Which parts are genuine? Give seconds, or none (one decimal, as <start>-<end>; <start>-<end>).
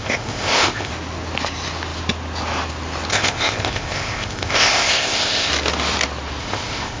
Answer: 0.9-3.1; 5.5-6.4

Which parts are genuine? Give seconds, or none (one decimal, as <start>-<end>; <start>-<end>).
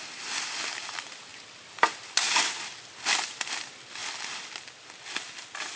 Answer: 0.0-5.8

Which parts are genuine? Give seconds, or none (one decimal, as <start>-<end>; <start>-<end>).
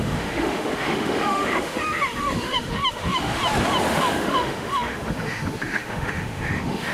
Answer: 3.4-3.9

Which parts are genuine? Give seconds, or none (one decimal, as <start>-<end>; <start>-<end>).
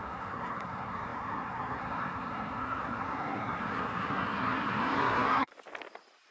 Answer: 5.5-6.3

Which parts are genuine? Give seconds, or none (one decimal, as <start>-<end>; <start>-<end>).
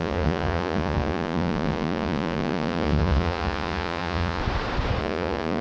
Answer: 4.4-5.0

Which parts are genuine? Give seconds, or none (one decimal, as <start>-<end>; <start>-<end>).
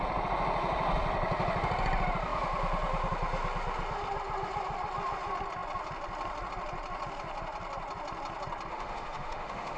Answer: 0.0-8.7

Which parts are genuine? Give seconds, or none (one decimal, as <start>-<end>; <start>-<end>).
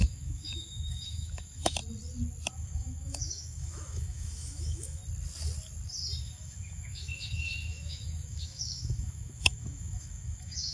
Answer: 1.8-2.5; 5.0-6.2